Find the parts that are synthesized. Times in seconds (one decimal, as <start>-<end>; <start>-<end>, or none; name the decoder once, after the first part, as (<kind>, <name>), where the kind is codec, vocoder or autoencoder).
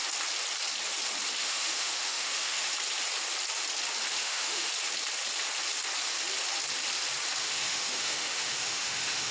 1.4-2.7 (autoencoder, DAC-VAE); 4.1-4.7; 7.4-9.3